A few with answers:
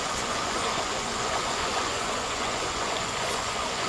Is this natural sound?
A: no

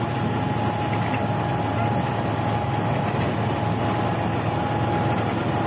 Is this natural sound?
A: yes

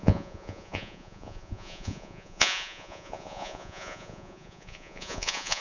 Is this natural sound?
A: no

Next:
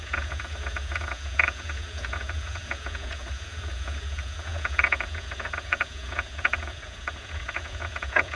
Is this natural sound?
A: no